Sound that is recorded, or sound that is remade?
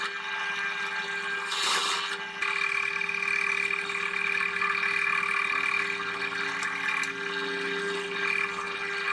recorded